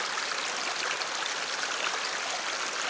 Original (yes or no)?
yes